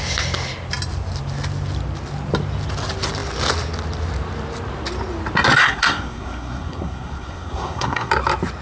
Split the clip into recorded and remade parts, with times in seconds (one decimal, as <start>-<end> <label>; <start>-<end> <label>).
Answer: 0.0-5.6 recorded; 5.6-8.1 remade; 8.1-8.6 recorded